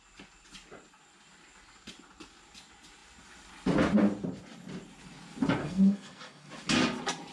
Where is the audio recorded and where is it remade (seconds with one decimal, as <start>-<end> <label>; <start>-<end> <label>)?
0.0-5.6 recorded; 5.6-6.5 remade; 6.5-7.3 recorded